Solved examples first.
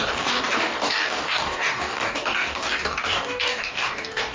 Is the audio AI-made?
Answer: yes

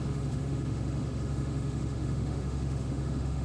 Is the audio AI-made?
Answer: yes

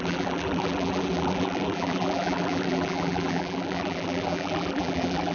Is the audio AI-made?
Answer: yes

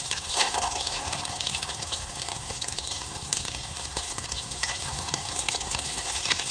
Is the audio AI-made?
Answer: yes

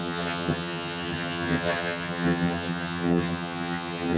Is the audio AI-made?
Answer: yes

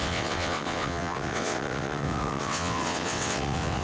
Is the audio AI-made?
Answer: yes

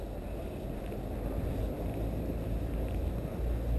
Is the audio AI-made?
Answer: no